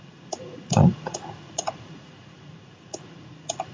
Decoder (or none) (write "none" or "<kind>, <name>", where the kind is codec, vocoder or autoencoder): vocoder, Vocos